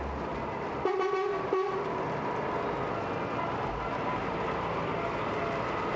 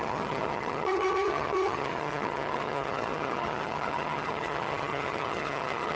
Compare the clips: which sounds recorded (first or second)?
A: first